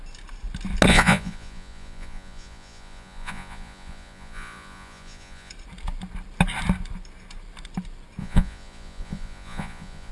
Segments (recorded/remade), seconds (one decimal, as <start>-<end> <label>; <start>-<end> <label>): 0.0-0.9 recorded; 0.9-5.5 remade; 5.5-8.2 recorded; 8.2-10.1 remade